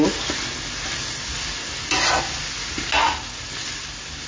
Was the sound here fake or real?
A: real